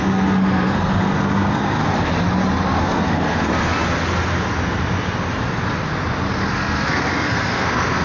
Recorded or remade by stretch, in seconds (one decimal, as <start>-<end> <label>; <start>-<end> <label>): 0.0-1.8 remade; 1.8-2.8 recorded; 2.8-3.5 remade; 3.5-6.5 recorded; 6.5-8.0 remade